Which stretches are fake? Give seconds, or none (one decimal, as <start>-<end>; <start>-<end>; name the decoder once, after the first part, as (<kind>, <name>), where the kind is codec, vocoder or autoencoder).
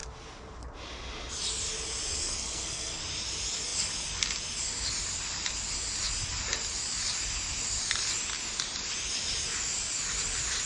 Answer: 2.2-3.0 (codec, SNAC)